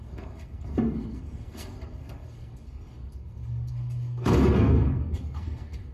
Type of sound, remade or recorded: remade